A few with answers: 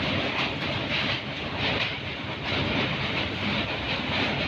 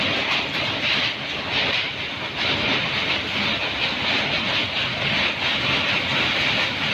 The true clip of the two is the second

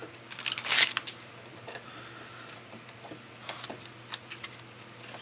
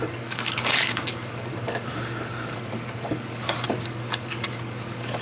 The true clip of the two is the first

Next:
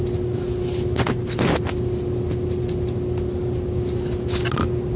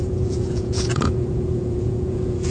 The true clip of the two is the first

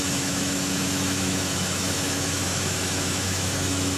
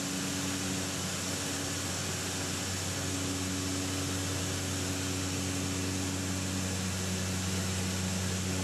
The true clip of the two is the second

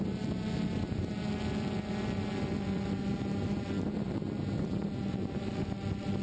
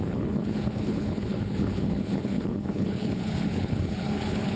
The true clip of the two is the first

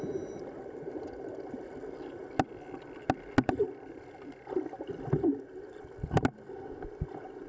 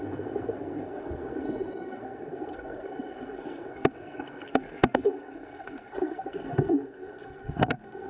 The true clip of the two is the first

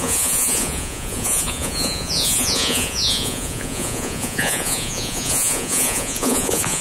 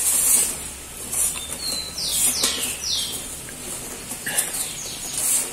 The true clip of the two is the second